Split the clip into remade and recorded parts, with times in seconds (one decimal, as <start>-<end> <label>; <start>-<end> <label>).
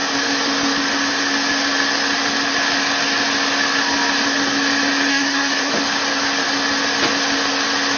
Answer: 0.0-5.1 recorded; 5.1-5.7 remade; 5.7-8.0 recorded